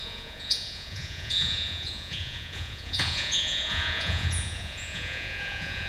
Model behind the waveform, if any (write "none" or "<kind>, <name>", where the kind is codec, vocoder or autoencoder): vocoder, Vocos